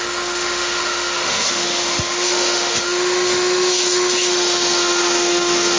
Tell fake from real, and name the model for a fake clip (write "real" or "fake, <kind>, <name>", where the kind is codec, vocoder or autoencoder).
fake, autoencoder, DAC-VAE